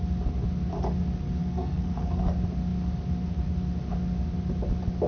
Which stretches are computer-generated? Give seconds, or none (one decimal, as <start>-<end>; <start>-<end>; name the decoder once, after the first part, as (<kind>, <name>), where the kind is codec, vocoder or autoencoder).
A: 1.4-2.2 (codec, SNAC)